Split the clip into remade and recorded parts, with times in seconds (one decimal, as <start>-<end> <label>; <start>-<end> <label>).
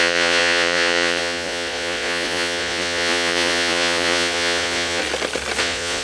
0.0-5.0 remade; 5.0-5.6 recorded; 5.6-6.0 remade